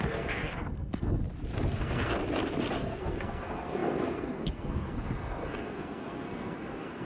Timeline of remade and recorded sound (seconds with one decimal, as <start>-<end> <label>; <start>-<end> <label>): 0.0-1.2 remade; 1.2-1.8 recorded; 1.8-2.2 remade; 2.2-2.8 recorded; 2.8-7.0 remade